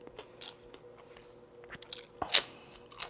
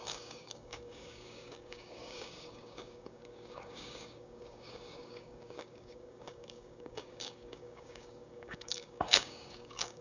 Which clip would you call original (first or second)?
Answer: first